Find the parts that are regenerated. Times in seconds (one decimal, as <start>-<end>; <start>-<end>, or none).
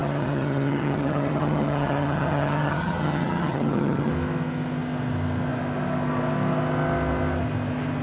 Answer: 0.0-4.1